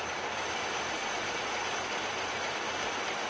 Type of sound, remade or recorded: remade